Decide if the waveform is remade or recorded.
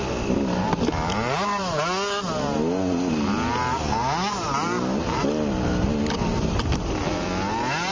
recorded